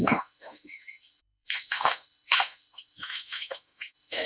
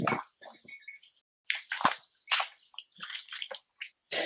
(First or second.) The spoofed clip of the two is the first